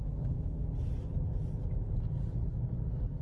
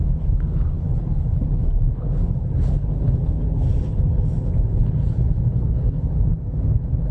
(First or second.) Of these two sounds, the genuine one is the first